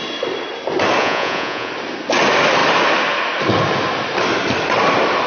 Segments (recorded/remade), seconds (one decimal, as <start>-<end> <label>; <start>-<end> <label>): 0.0-1.0 recorded; 1.0-1.7 remade; 1.7-5.3 recorded